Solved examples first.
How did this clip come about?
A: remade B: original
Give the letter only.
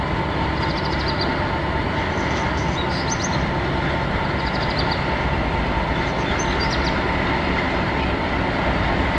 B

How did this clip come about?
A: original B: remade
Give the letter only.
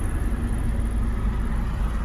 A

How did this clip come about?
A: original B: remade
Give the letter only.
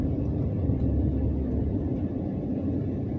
A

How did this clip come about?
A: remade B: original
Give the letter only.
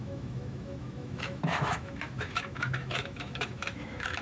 A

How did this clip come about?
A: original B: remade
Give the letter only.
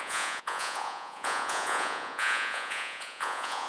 B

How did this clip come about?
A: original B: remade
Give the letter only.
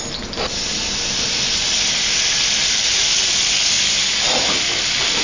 A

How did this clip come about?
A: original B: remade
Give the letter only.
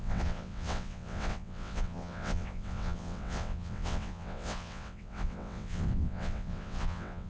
B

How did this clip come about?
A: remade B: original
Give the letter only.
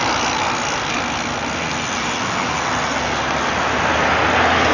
B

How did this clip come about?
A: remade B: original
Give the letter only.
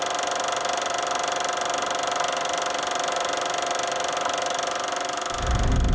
B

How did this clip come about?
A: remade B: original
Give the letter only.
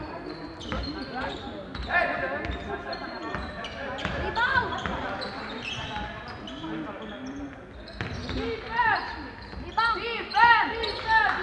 B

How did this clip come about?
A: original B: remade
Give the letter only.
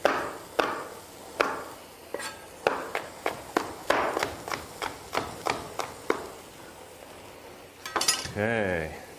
A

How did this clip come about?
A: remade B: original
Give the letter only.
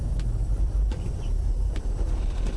A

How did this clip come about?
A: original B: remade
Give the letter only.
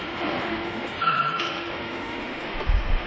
B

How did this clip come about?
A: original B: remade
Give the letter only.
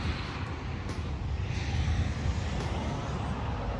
A